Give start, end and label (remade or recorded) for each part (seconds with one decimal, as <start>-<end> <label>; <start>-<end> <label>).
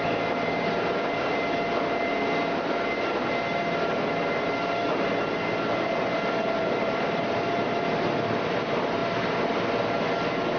0.0-10.6 recorded